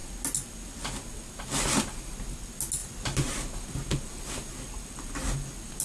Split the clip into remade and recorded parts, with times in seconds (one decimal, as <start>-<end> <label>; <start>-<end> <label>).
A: 0.0-5.8 recorded